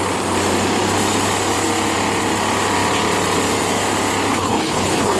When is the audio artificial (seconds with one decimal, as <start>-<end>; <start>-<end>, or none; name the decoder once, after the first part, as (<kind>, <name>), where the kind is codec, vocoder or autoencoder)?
4.3-5.2 (codec, HILCodec)

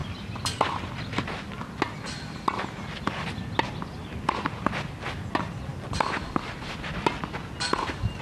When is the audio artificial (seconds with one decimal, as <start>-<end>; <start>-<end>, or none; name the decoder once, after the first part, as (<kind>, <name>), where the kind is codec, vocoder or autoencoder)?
none

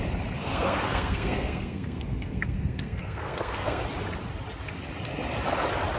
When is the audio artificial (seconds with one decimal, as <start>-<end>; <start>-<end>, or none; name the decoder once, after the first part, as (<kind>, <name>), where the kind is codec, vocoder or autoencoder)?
0.4-3.8 (codec, SNAC)

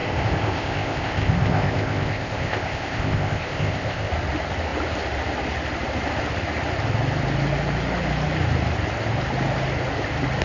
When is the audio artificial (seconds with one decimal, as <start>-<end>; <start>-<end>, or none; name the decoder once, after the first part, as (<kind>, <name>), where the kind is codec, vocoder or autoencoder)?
0.0-4.1 (codec, ZipCodec)